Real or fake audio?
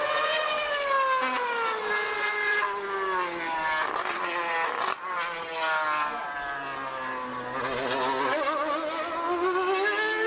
real